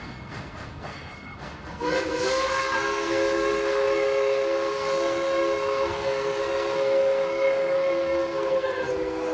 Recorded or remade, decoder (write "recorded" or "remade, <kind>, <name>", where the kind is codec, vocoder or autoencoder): remade, codec, SNAC